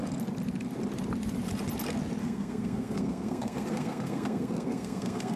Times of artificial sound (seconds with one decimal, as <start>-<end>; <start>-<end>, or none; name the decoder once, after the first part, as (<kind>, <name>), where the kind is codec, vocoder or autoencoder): 2.2-5.4 (codec, SNAC)